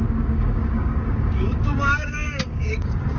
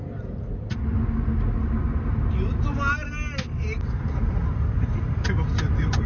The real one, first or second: second